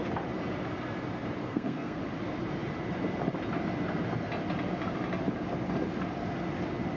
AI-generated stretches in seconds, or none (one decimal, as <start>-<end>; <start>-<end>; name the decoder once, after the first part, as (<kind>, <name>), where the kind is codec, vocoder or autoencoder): 1.4-2.0 (codec, SNAC)